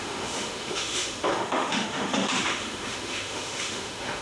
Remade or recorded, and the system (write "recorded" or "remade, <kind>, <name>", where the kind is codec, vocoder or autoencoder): remade, autoencoder, DAC-VAE